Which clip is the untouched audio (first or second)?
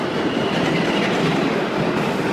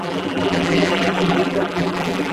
first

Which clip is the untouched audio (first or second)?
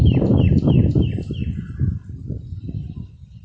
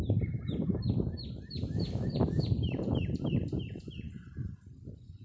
first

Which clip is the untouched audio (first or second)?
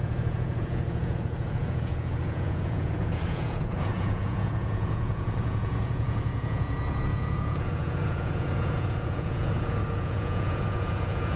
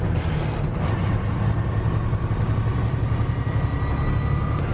second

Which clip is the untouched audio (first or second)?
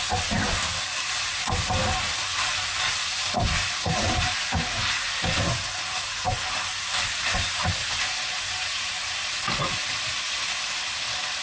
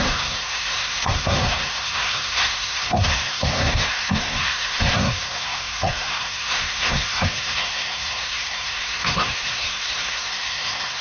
first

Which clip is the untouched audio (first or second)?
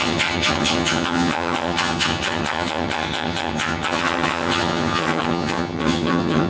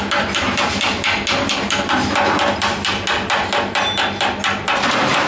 second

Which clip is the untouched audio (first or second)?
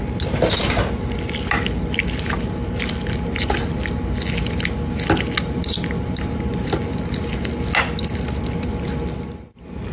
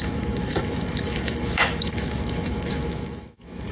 first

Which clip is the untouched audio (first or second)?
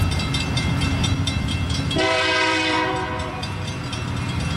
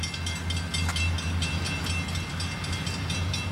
second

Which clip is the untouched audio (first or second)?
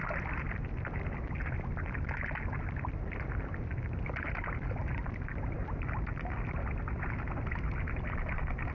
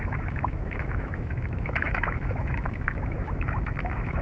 first